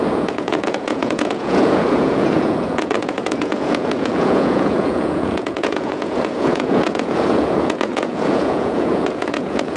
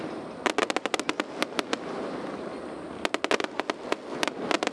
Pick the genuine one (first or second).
second